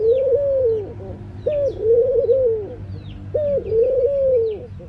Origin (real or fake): real